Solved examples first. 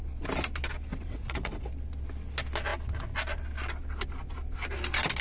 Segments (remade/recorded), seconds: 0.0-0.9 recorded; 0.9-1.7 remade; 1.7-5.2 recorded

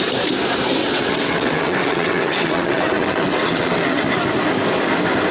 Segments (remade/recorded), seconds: 0.0-0.8 recorded; 0.8-4.0 remade; 4.0-5.3 recorded

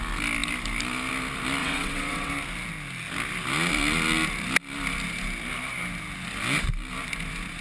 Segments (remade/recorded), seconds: 0.0-1.6 recorded; 1.6-2.3 remade; 2.3-7.6 recorded